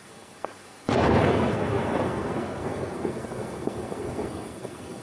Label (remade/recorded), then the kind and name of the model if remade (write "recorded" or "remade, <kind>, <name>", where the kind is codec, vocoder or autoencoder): remade, codec, SNAC